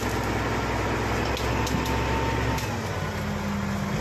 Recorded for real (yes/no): yes